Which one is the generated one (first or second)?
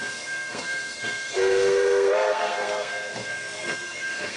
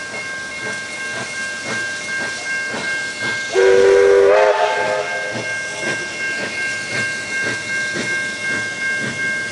first